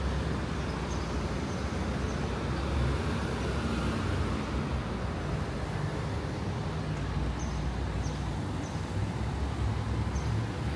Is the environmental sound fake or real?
real